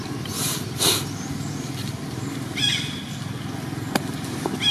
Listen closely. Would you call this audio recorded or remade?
recorded